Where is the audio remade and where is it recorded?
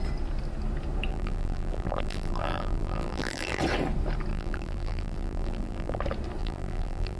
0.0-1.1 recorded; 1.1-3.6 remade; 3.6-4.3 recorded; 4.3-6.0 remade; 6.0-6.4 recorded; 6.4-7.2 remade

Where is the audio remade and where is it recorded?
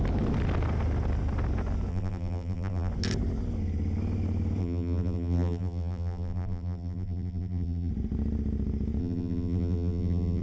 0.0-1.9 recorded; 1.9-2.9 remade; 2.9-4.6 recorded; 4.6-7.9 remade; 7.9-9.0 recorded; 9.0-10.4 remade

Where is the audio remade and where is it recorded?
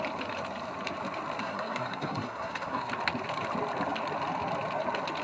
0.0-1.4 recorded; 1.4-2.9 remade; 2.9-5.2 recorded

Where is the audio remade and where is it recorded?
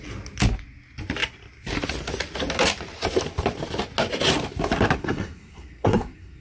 0.0-5.0 recorded; 5.0-6.4 remade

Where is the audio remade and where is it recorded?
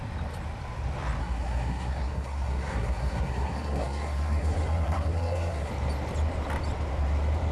0.0-1.2 recorded; 1.2-5.7 remade; 5.7-7.5 recorded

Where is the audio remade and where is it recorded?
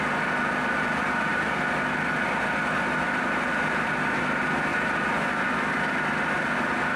0.0-7.0 recorded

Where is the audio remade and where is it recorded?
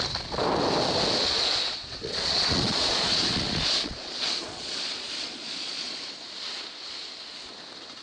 0.0-1.2 recorded; 1.2-6.0 remade; 6.0-8.0 recorded